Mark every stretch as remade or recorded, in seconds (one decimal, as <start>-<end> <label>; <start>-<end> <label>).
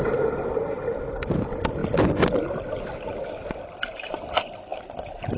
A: 0.0-5.4 recorded